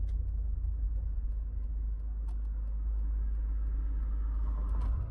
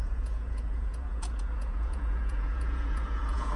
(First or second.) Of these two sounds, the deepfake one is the second